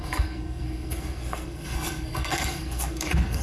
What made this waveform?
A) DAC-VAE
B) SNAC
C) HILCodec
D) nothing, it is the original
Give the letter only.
B